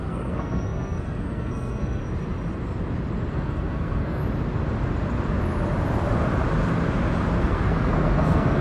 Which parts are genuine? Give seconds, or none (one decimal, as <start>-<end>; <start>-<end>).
2.0-3.3; 4.2-7.4